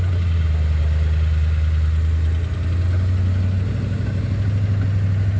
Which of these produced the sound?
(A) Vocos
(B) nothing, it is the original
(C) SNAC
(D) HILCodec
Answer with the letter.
B